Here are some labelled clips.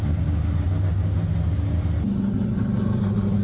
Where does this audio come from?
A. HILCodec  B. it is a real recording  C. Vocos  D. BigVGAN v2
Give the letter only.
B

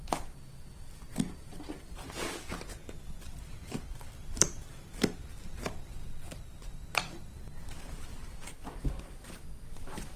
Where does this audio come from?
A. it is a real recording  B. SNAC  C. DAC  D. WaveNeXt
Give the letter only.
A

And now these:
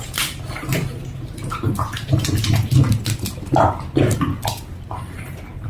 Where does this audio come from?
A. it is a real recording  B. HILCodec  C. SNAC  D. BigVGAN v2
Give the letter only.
A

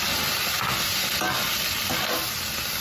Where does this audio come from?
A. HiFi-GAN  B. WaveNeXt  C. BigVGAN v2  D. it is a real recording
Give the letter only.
D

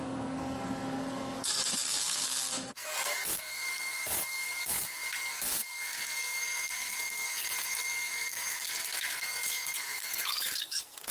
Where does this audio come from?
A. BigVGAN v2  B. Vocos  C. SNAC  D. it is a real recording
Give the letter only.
C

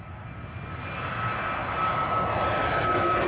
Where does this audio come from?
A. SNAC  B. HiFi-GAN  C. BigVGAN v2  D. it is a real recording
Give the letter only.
D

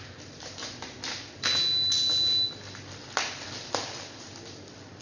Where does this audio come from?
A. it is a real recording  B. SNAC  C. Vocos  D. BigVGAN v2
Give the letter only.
A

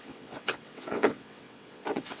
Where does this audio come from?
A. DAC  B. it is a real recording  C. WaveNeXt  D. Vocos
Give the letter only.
C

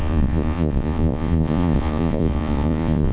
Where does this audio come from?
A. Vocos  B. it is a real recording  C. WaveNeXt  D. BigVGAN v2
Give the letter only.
A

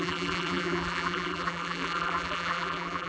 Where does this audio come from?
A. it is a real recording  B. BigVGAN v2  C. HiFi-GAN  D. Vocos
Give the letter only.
B